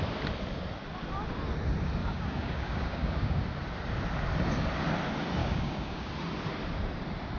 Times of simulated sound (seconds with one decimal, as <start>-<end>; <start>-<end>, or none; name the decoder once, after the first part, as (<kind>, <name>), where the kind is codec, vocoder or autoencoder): 2.0-3.4 (codec, DAC); 5.4-6.1